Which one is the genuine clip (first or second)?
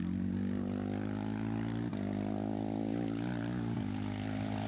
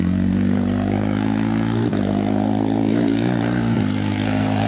first